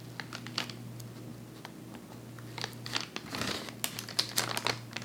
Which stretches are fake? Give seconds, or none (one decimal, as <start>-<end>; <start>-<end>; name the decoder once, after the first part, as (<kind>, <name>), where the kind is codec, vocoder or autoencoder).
none